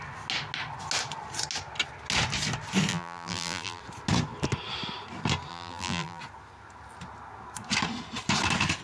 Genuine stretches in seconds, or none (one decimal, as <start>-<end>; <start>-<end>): 0.0-2.9; 3.8-5.5; 6.2-8.8